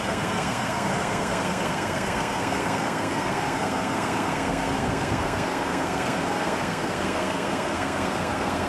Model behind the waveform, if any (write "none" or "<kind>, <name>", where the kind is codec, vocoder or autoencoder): codec, SNAC